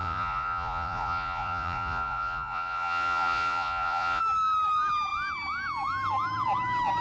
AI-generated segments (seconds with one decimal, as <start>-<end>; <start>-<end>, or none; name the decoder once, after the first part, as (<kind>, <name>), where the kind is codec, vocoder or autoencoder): 0.0-4.2 (vocoder, Vocos)